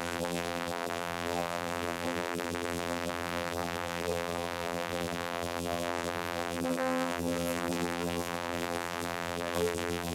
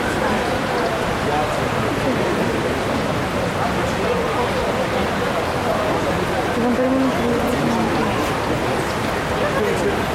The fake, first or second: first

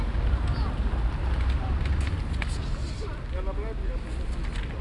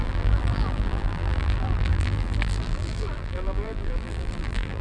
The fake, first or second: second